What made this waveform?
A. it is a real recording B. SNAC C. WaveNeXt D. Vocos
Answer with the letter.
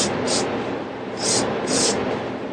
A